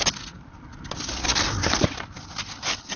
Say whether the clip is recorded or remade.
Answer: recorded